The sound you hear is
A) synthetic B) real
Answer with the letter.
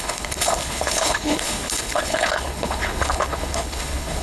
A